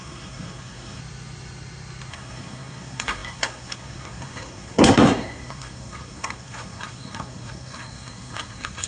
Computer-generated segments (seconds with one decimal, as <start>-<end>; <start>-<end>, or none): 0.0-1.0; 2.1-8.9